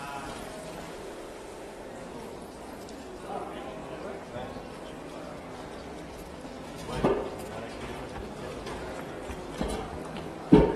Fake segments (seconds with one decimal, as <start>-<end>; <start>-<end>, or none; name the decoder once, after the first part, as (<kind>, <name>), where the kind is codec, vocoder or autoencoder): 0.9-1.9 (autoencoder, DAC-VAE)